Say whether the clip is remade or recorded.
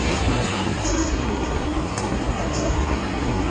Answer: remade